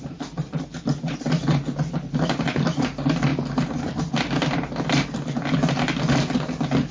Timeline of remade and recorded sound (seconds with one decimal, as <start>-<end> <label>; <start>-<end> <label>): 0.0-6.9 recorded